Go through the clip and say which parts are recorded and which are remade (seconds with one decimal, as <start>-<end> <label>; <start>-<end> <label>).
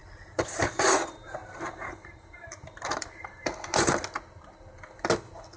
0.0-0.6 remade; 0.6-1.4 recorded; 1.4-3.5 remade; 3.5-5.6 recorded